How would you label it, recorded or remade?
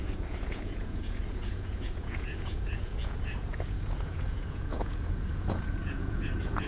remade